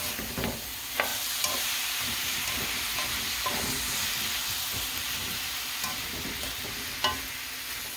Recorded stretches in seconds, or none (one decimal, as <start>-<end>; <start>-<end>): 0.0-1.1; 3.6-5.2; 6.0-8.0